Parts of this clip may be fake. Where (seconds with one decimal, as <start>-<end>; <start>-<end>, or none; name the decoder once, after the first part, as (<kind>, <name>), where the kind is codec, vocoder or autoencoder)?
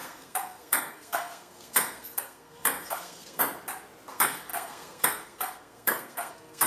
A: 0.0-3.4 (codec, SNAC); 4.1-6.7